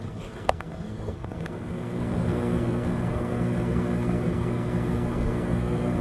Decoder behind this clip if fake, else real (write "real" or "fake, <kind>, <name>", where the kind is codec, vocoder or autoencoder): fake, codec, SNAC